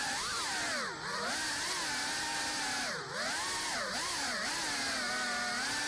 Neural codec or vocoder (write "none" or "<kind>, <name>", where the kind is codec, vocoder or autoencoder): none